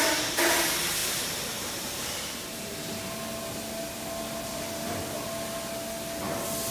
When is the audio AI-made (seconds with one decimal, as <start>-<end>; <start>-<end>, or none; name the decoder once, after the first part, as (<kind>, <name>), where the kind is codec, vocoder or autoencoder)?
1.0-3.0 (vocoder, BigVGAN v2)